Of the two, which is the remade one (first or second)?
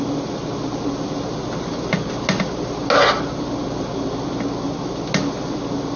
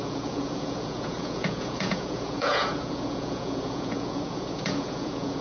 second